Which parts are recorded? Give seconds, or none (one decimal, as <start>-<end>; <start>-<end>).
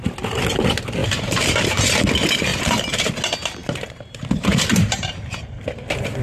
0.0-1.0; 1.8-2.5; 3.0-3.6; 5.2-6.2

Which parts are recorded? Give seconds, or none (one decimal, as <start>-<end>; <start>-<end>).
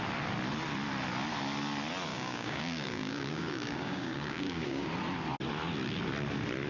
0.0-2.1; 4.9-6.7